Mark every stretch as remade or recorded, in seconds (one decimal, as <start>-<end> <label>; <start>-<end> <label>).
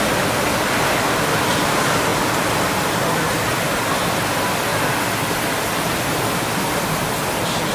0.0-7.7 recorded